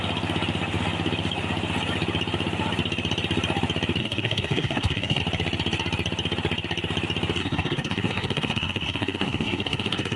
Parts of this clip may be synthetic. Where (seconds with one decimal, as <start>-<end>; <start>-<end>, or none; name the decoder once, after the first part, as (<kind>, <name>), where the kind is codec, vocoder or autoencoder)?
4.0-5.2 (codec, SNAC); 7.4-10.2